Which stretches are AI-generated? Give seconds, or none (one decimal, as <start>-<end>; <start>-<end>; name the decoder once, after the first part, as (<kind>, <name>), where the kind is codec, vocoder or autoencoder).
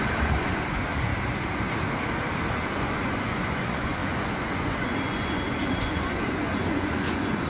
0.0-1.1 (vocoder, Vocos); 2.5-7.5